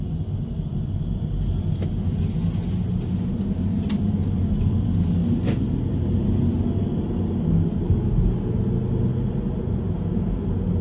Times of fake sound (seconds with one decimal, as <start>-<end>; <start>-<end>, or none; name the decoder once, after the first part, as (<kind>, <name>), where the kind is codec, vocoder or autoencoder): none